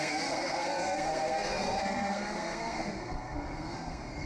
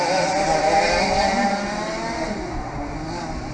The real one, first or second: second